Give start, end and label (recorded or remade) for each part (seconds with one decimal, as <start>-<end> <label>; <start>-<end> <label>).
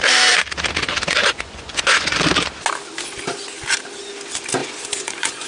0.0-1.2 recorded; 1.2-2.2 remade; 2.2-4.6 recorded; 4.6-5.5 remade